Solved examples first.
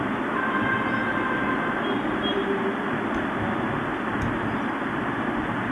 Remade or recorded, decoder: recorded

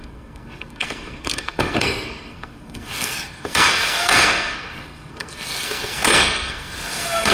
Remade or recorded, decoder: remade, codec, SNAC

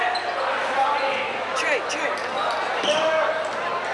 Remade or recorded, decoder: recorded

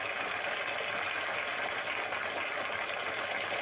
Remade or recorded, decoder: recorded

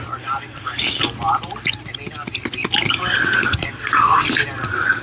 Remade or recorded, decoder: recorded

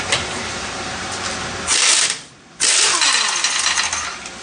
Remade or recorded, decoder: recorded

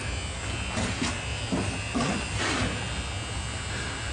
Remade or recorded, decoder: recorded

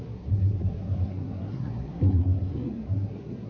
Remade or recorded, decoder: remade, codec, SNAC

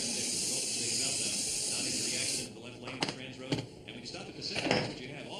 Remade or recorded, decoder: recorded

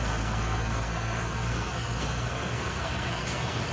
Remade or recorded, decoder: remade, codec, SNAC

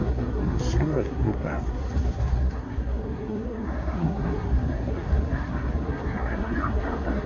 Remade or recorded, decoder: remade, codec, SNAC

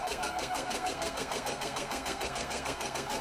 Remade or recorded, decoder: remade, codec, SNAC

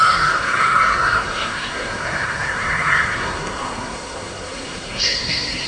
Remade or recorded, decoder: remade, codec, SNAC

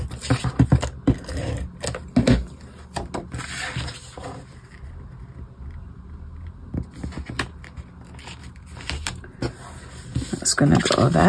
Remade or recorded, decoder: recorded